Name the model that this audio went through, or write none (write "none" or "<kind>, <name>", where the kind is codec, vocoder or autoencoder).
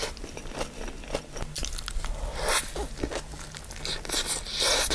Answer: none